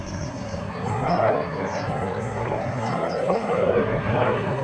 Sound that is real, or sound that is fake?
fake